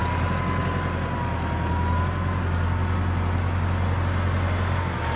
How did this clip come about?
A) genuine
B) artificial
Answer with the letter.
A